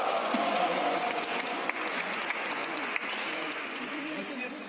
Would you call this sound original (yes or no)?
no